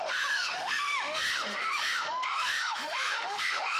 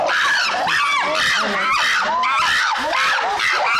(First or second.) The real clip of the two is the second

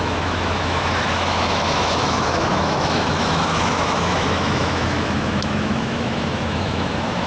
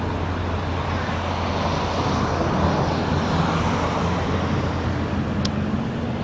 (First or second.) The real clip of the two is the second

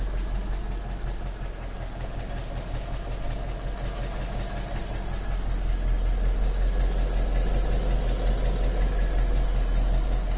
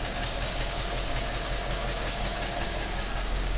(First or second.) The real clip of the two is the first